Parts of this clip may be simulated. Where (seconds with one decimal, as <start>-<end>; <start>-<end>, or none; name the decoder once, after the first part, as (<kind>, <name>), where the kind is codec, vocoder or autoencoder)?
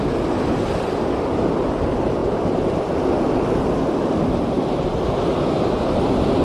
none